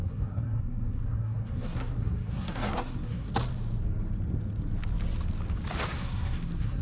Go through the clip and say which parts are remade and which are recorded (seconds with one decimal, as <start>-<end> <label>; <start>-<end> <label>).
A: 0.0-3.3 remade; 3.3-5.9 recorded; 5.9-6.8 remade